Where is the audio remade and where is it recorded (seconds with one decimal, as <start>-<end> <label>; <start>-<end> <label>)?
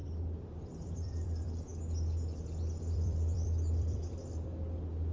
0.0-0.7 recorded; 0.7-1.7 remade; 1.7-2.8 recorded; 2.8-5.1 remade